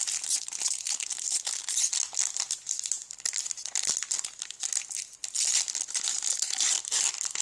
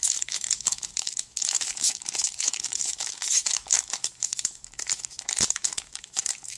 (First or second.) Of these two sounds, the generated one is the second